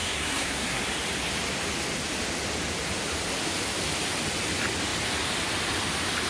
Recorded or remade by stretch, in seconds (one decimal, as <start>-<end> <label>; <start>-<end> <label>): 0.0-0.8 remade; 0.8-6.3 recorded